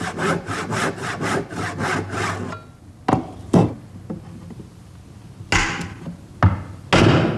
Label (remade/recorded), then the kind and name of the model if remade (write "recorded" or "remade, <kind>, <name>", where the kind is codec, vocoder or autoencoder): recorded